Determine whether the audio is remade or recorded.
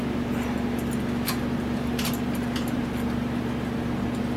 recorded